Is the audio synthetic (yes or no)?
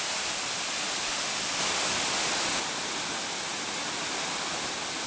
no